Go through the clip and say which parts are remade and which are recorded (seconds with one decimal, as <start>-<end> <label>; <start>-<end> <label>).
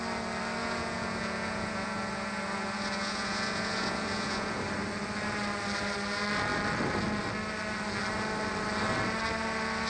0.0-0.6 recorded; 0.6-4.6 remade; 4.6-9.9 recorded